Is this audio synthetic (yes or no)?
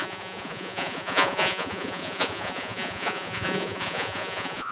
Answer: yes